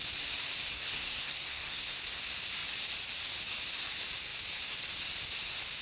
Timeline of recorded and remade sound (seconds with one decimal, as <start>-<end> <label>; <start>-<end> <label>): 0.0-0.7 recorded; 0.7-2.0 remade; 2.0-5.8 recorded

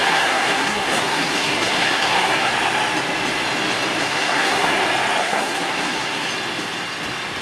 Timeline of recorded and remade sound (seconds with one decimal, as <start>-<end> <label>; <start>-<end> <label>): 0.0-2.5 remade; 2.5-4.0 recorded; 4.0-4.8 remade; 4.8-5.2 recorded; 5.2-6.3 remade; 6.3-7.4 recorded

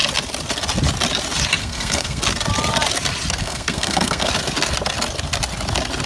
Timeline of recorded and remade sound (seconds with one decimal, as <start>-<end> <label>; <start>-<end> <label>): 0.0-1.6 recorded; 1.6-2.2 remade; 2.2-3.4 recorded; 3.4-4.3 remade; 4.3-6.1 recorded

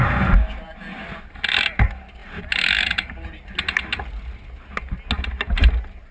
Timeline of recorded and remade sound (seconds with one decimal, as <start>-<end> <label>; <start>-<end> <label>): 0.0-6.1 recorded

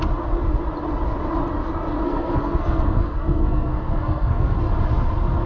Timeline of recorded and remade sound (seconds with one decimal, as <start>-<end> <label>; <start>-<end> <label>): 0.0-2.0 recorded; 2.0-4.6 remade; 4.6-5.5 recorded

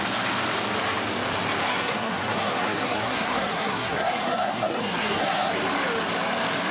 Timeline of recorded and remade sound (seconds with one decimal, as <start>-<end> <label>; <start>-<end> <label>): 0.0-1.7 recorded; 1.7-5.5 remade; 5.5-6.7 recorded

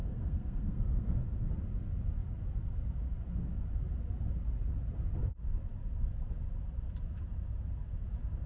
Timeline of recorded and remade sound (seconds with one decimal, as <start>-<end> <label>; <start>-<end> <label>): 0.0-1.5 remade; 1.5-8.5 recorded

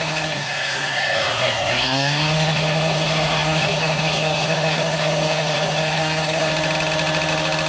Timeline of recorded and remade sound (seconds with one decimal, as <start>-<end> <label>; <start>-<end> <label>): 0.0-6.5 remade; 6.5-7.7 recorded